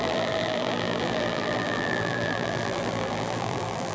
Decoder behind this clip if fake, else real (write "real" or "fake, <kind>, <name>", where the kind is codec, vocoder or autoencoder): fake, vocoder, BigVGAN v2